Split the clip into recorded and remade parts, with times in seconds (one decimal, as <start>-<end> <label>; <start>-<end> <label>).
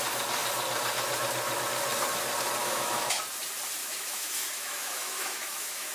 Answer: 0.0-2.6 recorded; 2.6-3.2 remade; 3.2-3.8 recorded; 3.8-5.9 remade